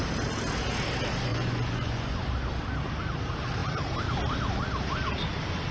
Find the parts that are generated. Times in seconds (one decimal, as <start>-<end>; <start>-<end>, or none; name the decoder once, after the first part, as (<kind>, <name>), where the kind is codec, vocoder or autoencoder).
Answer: 1.3-2.3 (vocoder, Vocos)